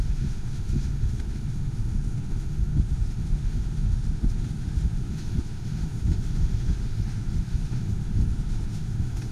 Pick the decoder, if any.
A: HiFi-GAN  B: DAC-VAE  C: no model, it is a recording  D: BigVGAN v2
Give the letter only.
B